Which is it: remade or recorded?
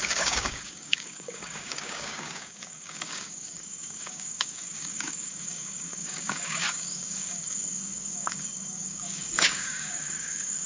remade